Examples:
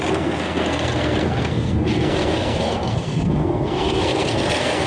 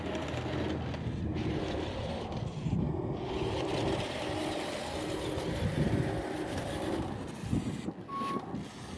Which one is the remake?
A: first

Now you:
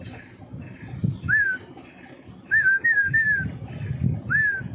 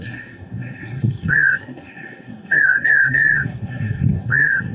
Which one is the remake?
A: second